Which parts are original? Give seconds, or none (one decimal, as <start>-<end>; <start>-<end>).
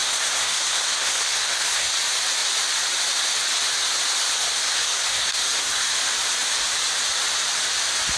1.9-4.5; 5.9-8.2